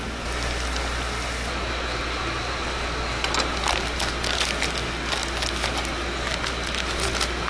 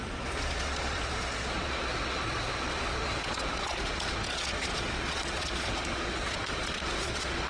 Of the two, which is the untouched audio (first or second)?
first